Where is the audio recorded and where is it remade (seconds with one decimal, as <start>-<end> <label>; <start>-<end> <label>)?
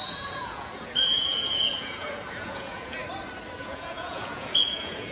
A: 0.0-3.0 remade; 3.0-3.6 recorded; 3.6-5.1 remade